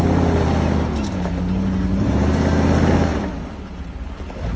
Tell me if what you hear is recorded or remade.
recorded